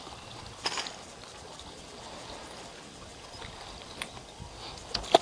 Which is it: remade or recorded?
recorded